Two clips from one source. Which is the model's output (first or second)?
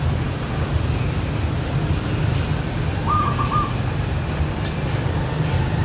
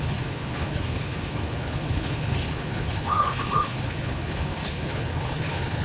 second